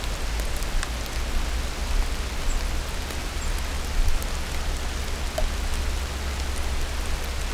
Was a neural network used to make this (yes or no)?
no